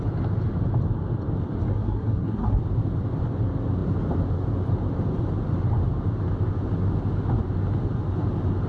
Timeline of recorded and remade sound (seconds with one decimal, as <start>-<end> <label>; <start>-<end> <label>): 0.0-1.7 recorded; 1.7-2.6 remade; 2.6-8.7 recorded